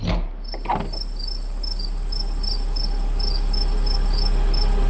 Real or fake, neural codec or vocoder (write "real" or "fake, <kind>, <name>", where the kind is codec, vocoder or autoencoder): real